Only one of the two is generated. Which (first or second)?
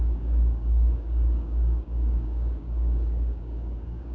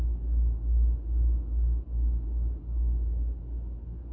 first